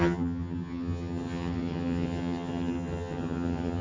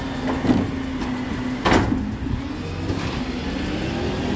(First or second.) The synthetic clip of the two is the first